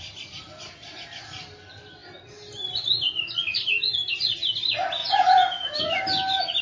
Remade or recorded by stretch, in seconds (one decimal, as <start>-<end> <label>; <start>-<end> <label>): 0.0-5.0 recorded; 5.0-5.8 remade; 5.8-6.6 recorded